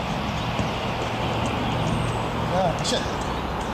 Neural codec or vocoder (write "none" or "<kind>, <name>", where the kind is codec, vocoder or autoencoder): none